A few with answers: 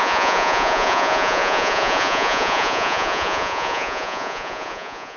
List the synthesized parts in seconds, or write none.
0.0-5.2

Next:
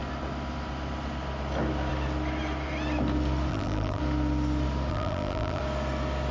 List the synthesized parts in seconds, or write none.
3.5-4.0; 4.9-5.6

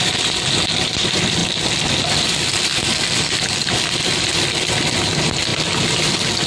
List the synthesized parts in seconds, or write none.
0.0-5.5; 6.1-6.5

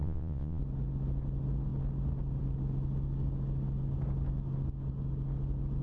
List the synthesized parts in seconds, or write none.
0.0-0.6

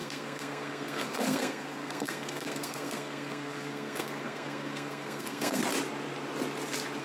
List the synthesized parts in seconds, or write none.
0.0-5.6

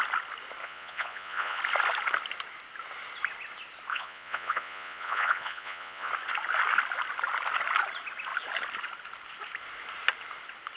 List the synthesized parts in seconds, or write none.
0.6-1.6; 3.9-6.1

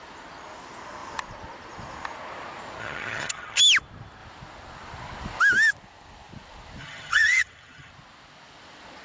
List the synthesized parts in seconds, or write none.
2.8-3.6; 6.8-7.9